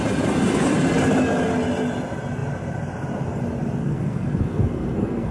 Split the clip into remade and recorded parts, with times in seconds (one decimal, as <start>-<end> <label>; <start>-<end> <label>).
0.0-3.8 recorded; 3.8-5.3 remade